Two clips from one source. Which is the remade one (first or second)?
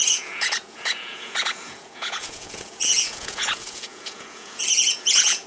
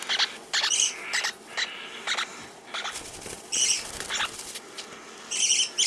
first